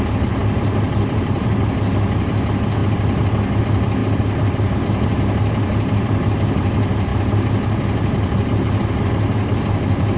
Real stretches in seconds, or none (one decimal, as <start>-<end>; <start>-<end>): 0.0-10.2